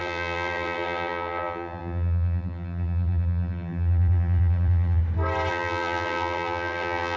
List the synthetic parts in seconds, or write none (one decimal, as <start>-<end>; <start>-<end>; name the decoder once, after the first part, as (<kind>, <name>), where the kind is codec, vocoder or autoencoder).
0.0-5.0 (vocoder, BigVGAN v2); 5.5-7.2